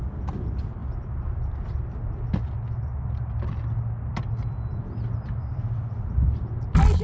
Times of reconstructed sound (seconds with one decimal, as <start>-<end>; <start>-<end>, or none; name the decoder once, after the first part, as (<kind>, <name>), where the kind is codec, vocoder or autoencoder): none